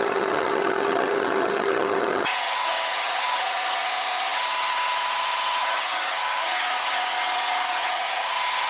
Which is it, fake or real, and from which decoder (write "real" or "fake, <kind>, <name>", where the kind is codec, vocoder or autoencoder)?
fake, vocoder, HiFi-GAN